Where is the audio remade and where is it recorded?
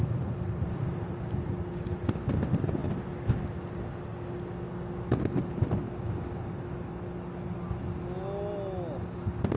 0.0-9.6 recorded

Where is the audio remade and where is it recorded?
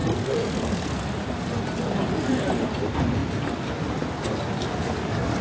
0.0-1.0 remade; 1.0-5.4 recorded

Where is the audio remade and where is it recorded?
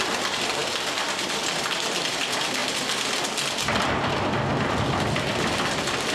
0.0-6.1 recorded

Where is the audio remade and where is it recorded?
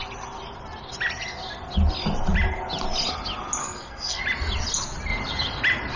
0.0-3.6 recorded; 3.6-4.2 remade; 4.2-6.0 recorded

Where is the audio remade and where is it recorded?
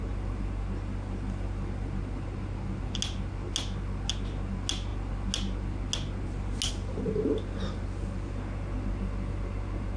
0.0-10.0 recorded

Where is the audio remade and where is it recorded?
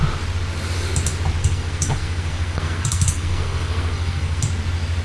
0.0-1.4 recorded; 1.4-4.4 remade; 4.4-5.0 recorded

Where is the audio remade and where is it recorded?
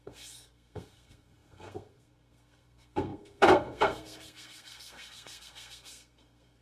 0.0-6.6 remade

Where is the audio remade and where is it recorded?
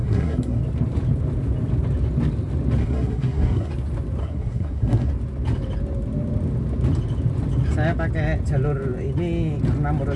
0.0-0.6 remade; 0.6-2.8 recorded; 2.8-3.7 remade; 3.7-4.2 recorded; 4.2-5.1 remade; 5.1-10.2 recorded